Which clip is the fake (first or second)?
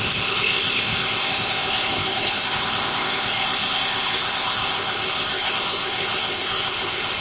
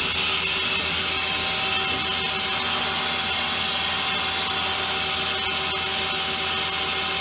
first